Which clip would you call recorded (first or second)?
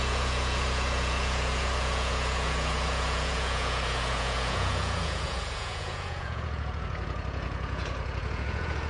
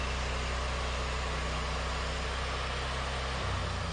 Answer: second